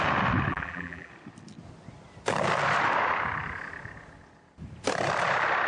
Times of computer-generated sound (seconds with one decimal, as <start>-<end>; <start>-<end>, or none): 0.5-1.1